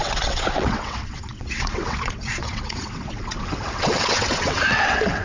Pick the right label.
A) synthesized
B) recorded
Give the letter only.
A